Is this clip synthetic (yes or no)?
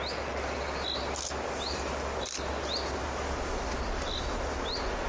no